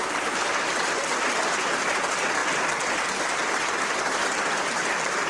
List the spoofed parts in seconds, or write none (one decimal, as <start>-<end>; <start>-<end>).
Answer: none